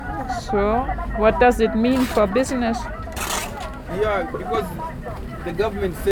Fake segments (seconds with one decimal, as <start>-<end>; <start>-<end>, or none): none